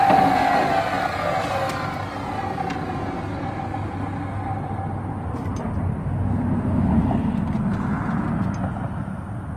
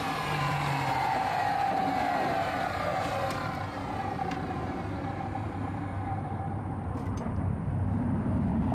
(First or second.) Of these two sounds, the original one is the first